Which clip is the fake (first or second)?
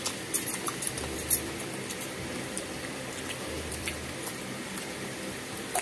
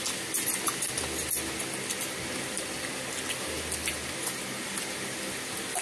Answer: first